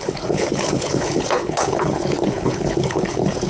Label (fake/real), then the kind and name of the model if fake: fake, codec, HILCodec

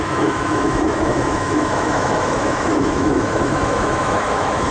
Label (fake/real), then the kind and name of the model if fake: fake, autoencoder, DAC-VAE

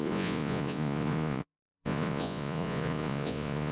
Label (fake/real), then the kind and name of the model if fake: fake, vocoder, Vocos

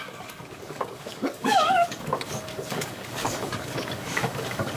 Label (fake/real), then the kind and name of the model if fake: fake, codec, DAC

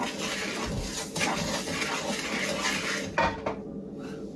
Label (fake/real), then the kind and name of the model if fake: real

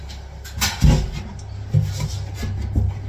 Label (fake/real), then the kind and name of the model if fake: real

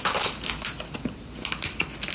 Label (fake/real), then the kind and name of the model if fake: real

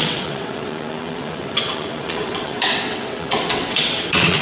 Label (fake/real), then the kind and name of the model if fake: fake, vocoder, WaveNeXt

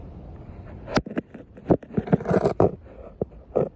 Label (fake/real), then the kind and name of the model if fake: real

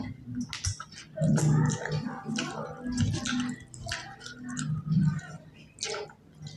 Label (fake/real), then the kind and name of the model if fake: real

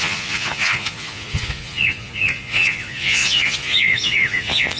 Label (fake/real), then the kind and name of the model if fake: fake, vocoder, Vocos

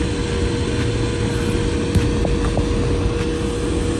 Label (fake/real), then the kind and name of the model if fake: real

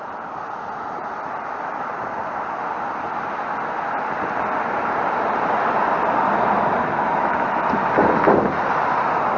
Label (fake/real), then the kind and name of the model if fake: real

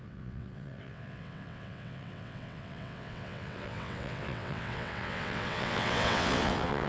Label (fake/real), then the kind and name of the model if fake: fake, vocoder, WaveNeXt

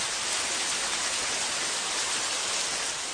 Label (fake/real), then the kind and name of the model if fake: real